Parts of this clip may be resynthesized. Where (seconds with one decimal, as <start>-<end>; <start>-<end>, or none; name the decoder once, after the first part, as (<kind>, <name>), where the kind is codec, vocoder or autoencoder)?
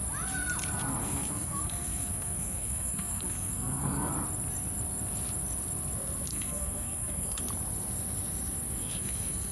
1.0-4.1 (codec, SNAC); 6.3-7.4; 8.8-9.5